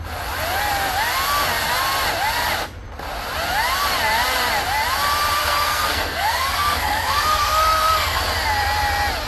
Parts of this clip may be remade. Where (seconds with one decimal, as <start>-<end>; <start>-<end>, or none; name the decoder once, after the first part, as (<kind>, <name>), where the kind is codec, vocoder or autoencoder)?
5.4-8.2 (codec, SNAC)